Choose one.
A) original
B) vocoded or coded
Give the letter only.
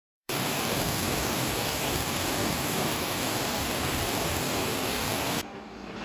B